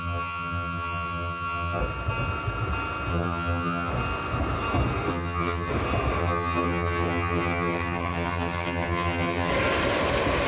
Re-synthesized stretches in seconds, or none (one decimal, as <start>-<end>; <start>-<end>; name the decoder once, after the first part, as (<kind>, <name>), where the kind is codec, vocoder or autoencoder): 0.0-1.8 (vocoder, HiFi-GAN); 3.1-3.9; 5.1-5.7; 6.2-9.5